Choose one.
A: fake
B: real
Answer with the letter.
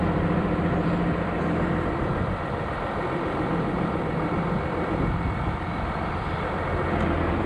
B